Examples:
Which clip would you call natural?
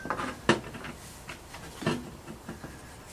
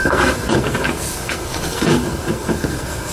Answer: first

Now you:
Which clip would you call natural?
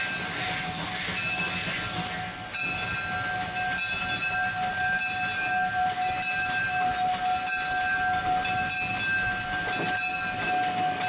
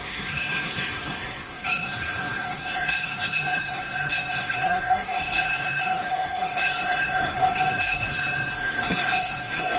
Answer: first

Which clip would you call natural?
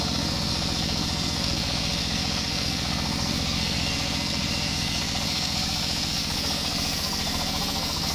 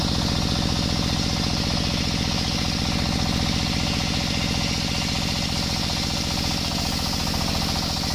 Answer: second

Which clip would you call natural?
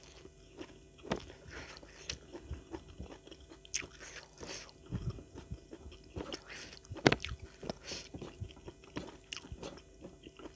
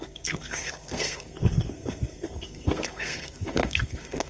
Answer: first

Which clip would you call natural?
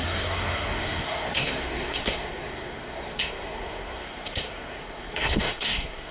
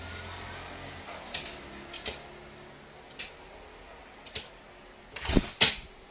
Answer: second